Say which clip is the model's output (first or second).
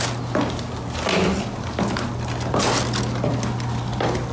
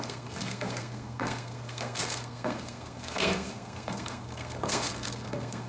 second